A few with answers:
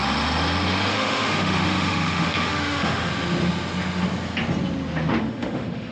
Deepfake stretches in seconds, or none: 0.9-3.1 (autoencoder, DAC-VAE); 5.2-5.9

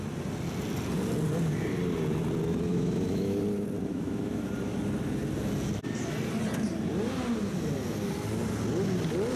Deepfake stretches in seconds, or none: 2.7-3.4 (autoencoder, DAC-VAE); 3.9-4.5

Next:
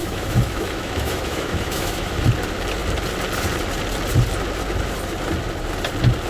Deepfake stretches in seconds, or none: 0.0-2.3 (autoencoder, DAC-VAE)

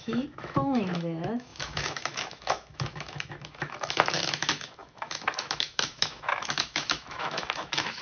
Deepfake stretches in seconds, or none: 0.0-8.0 (autoencoder, DAC-VAE)

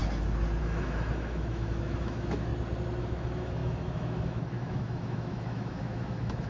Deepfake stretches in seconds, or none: 0.6-2.5 (autoencoder, DAC-VAE); 3.0-6.5

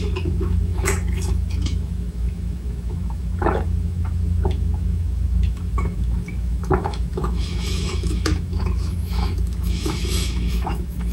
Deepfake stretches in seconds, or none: 0.0-11.1 (autoencoder, DAC-VAE)